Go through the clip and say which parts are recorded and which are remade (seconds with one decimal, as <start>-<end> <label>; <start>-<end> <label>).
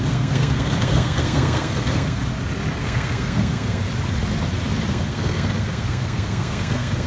0.0-2.2 remade; 2.2-2.8 recorded; 2.8-3.8 remade; 3.8-4.9 recorded; 4.9-7.1 remade